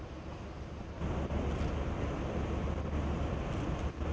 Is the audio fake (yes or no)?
no